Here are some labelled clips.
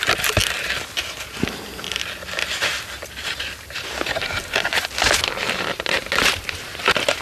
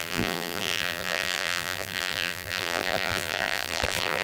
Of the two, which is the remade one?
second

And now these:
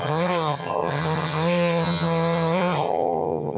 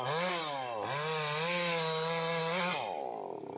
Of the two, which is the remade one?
first